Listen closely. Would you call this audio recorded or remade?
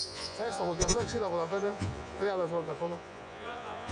remade